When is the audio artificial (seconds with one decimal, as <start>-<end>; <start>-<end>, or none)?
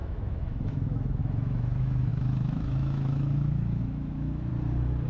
0.0-4.5